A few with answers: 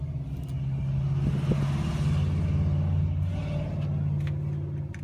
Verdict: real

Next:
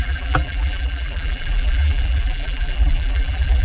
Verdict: fake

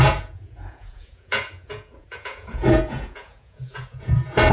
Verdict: fake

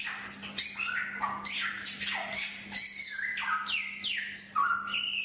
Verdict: real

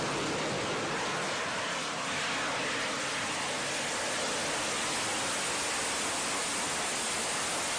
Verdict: real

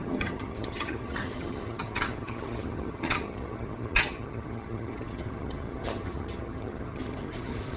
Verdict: fake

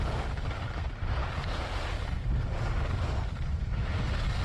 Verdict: real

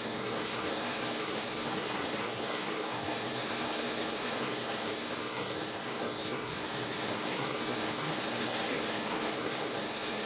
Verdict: fake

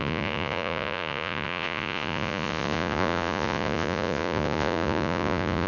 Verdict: fake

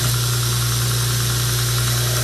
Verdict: real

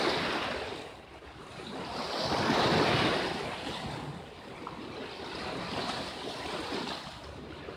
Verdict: real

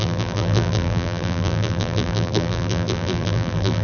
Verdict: fake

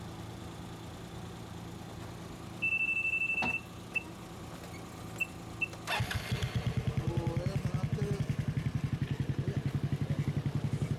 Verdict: real